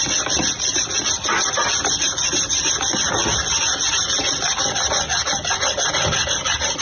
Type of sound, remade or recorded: recorded